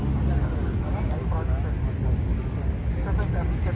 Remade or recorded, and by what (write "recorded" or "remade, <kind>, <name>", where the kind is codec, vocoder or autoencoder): recorded